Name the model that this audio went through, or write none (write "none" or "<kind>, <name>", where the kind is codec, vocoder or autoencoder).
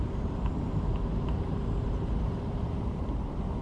vocoder, BigVGAN v2